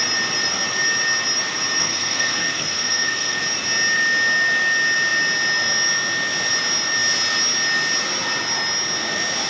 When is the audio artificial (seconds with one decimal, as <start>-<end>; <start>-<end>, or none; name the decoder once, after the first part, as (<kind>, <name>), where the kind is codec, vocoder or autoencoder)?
1.8-3.4 (codec, SNAC)